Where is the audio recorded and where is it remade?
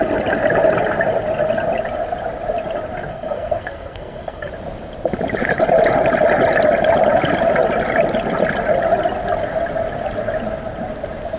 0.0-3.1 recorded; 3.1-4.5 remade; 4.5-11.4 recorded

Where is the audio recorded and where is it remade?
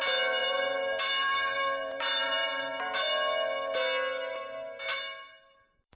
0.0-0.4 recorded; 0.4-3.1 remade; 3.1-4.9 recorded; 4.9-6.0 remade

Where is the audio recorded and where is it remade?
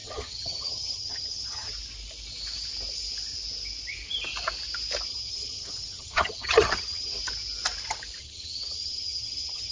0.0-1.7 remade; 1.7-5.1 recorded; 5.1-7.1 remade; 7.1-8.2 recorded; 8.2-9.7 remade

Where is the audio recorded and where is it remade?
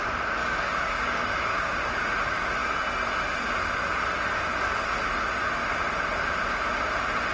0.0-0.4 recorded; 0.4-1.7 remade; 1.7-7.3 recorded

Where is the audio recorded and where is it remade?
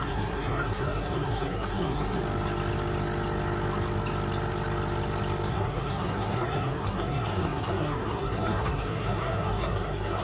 0.0-2.2 remade; 2.2-5.5 recorded; 5.5-10.2 remade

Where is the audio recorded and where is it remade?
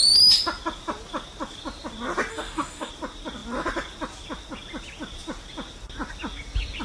0.0-2.3 recorded; 2.3-2.9 remade; 2.9-6.8 recorded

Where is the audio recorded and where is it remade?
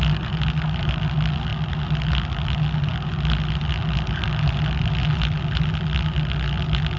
0.0-7.0 recorded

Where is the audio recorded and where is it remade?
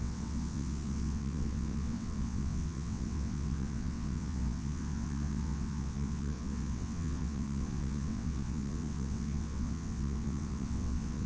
0.0-11.3 remade